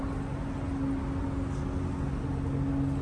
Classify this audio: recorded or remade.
recorded